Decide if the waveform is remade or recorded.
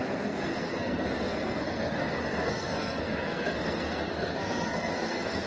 remade